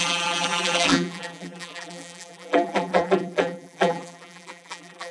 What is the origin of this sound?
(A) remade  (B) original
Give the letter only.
A